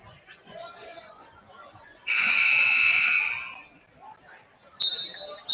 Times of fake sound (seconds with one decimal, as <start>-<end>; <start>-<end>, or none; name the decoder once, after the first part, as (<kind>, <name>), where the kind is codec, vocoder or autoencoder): 0.0-3.3 (vocoder, Vocos)